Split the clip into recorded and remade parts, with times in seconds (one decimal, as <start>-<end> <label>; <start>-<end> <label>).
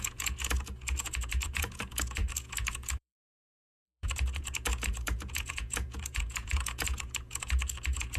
0.0-8.2 remade